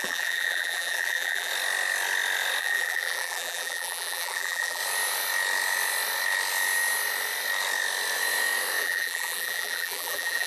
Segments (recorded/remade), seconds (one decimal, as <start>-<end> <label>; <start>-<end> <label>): 0.0-1.5 remade; 1.5-2.6 recorded; 2.6-4.8 remade; 4.8-8.8 recorded; 8.8-10.5 remade